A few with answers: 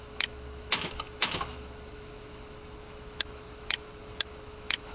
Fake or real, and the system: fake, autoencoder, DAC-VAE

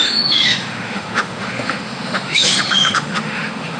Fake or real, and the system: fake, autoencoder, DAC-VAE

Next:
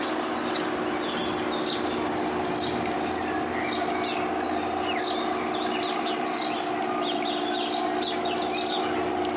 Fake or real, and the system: real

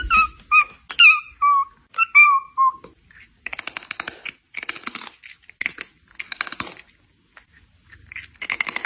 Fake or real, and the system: real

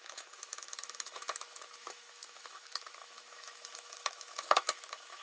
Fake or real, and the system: fake, autoencoder, DAC-VAE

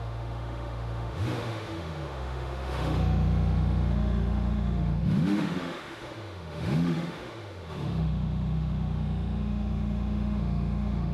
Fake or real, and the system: fake, autoencoder, DAC-VAE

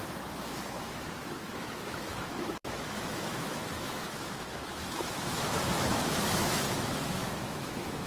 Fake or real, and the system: fake, autoencoder, DAC-VAE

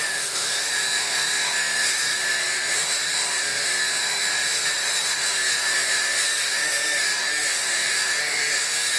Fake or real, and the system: fake, autoencoder, DAC-VAE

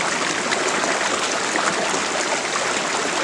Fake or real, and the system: real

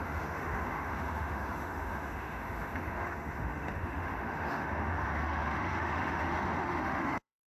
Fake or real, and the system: fake, autoencoder, DAC-VAE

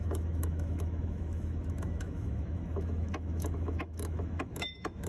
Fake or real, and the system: fake, autoencoder, DAC-VAE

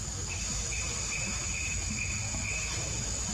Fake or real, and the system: fake, autoencoder, DAC-VAE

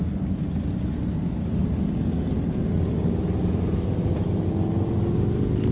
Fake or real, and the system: real